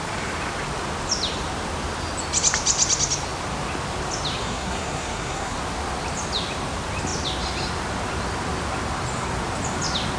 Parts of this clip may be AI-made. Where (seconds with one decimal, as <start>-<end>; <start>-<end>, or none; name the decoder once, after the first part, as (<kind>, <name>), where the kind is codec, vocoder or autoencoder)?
4.4-5.6 (codec, SNAC)